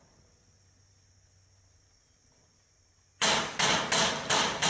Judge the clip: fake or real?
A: real